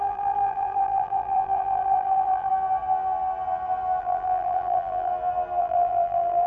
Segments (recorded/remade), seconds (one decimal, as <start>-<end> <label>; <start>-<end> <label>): 0.0-2.5 remade; 2.5-4.0 recorded; 4.0-5.1 remade; 5.1-5.6 recorded; 5.6-6.5 remade